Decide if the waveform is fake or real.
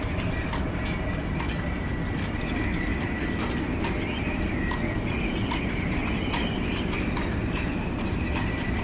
real